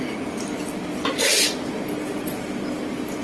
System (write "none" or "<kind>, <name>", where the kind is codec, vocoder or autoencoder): none